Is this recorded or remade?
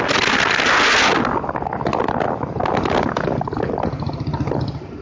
recorded